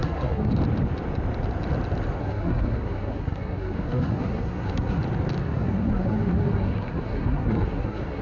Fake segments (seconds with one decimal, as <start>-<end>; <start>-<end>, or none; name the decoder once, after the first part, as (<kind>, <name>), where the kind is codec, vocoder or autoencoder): 0.0-0.5 (codec, SNAC); 2.2-5.0; 5.4-8.2